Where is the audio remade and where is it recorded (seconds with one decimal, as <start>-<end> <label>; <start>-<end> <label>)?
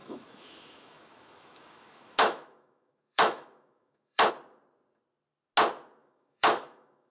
0.0-4.3 remade; 4.3-6.0 recorded; 6.0-7.1 remade